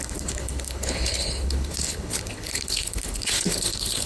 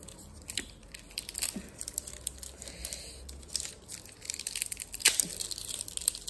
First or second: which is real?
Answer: second